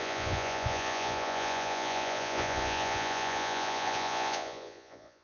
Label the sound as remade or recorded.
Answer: remade